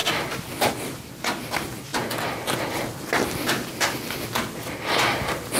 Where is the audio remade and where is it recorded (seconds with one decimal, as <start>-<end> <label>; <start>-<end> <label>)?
0.0-5.6 recorded

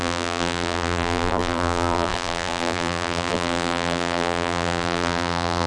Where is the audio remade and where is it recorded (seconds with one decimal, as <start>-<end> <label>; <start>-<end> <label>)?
0.0-5.7 remade